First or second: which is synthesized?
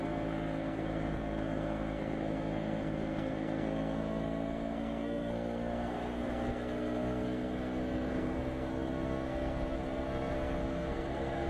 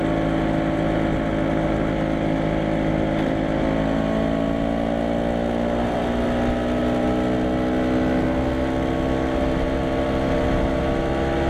first